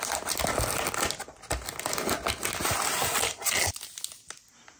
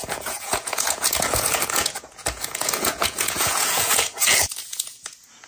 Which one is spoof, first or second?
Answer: second